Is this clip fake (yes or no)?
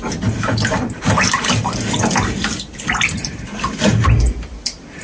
no